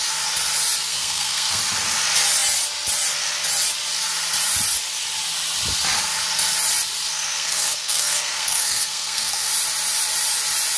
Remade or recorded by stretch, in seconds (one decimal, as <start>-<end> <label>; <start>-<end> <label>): 0.0-0.9 recorded; 0.9-1.6 remade; 1.6-7.1 recorded; 7.1-9.5 remade; 9.5-10.8 recorded

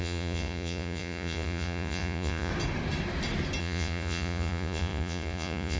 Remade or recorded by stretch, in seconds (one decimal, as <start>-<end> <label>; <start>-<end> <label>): 0.0-2.5 remade; 2.5-3.6 recorded; 3.6-5.8 remade

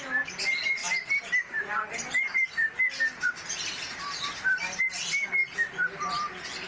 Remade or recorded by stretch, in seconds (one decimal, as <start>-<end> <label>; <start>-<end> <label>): 0.0-0.8 recorded; 0.8-4.8 remade; 4.8-5.4 recorded; 5.4-5.9 remade; 5.9-6.7 recorded

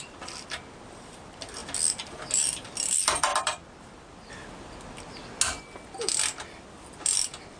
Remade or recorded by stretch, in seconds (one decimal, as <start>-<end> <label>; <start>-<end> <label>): 0.0-3.3 recorded; 3.3-4.3 remade; 4.3-7.6 recorded

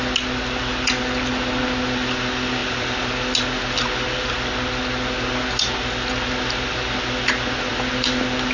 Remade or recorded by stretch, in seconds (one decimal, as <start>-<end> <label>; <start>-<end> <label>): 0.0-8.5 recorded

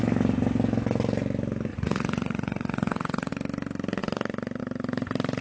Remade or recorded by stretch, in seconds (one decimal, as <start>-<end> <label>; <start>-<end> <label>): 0.0-1.7 recorded; 1.7-3.3 remade; 3.3-5.4 recorded